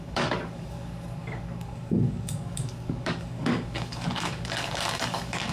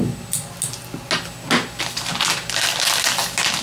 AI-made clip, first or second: first